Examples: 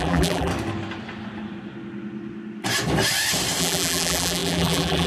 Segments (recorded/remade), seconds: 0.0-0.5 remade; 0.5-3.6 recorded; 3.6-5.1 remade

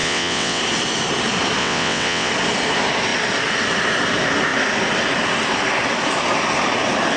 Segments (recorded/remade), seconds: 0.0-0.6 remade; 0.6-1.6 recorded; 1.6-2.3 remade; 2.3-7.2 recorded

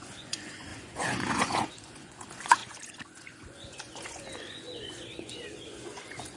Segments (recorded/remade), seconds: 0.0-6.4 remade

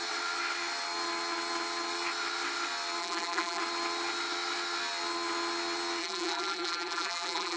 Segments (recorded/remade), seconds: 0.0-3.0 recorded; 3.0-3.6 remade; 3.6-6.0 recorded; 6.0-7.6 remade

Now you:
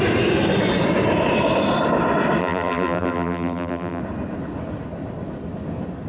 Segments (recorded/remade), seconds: 0.0-2.4 recorded; 2.4-4.0 remade; 4.0-6.1 recorded

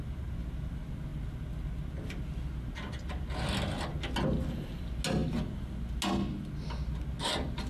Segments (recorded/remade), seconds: 0.0-7.7 recorded

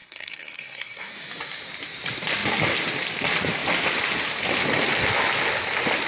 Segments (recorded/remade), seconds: 0.0-1.1 remade; 1.1-6.1 recorded

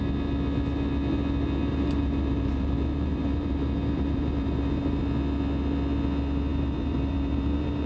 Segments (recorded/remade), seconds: 0.0-1.7 recorded; 1.7-5.0 remade; 5.0-6.5 recorded; 6.5-7.9 remade